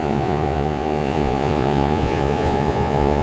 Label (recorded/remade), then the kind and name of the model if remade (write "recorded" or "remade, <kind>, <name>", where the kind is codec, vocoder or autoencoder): remade, vocoder, Vocos